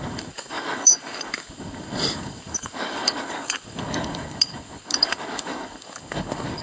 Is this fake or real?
fake